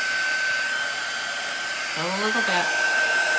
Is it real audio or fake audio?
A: real